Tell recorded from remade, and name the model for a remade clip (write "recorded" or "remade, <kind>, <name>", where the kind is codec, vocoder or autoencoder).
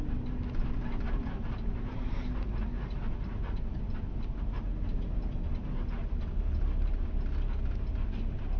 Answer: recorded